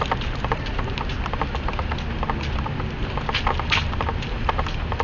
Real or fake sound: real